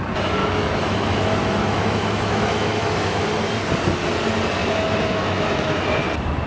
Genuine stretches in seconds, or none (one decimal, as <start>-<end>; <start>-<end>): 0.0-0.4; 3.2-4.6; 5.9-6.5